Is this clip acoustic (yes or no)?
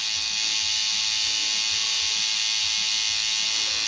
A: yes